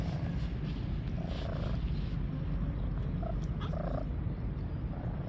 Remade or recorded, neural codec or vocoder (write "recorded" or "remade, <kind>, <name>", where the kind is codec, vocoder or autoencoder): recorded